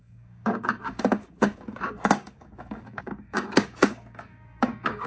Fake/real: fake